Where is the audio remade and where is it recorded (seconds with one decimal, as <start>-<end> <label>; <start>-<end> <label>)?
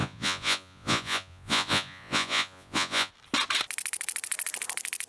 0.0-3.1 remade; 3.1-5.1 recorded